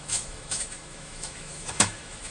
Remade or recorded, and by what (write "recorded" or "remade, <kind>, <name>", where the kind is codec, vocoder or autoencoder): remade, autoencoder, DAC-VAE